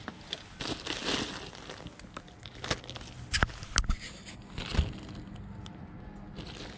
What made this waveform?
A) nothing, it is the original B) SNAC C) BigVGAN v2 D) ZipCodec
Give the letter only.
A